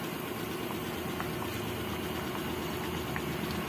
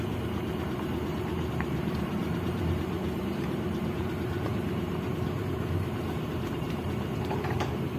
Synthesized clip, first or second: second